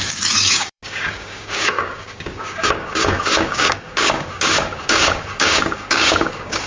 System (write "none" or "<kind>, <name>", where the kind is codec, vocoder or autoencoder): codec, DAC